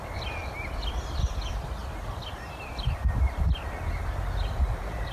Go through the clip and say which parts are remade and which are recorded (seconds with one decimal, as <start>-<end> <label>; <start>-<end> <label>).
0.0-1.8 remade; 1.8-2.3 recorded; 2.3-3.0 remade; 3.0-4.6 recorded; 4.6-5.1 remade